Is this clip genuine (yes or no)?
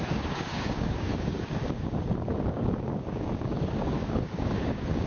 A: no